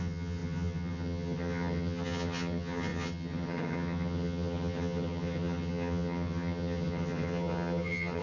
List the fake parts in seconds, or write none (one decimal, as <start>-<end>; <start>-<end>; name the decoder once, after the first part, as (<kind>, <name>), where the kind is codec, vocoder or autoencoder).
0.0-8.2 (vocoder, HiFi-GAN)